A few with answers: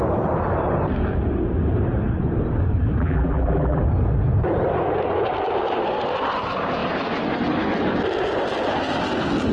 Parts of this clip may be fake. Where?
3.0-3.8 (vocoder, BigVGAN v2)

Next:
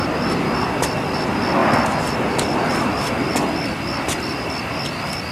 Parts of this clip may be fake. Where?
none

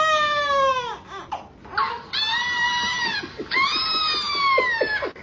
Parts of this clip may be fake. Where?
1.7-4.3 (vocoder, BigVGAN v2)